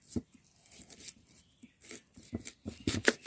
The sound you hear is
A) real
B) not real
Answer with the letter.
A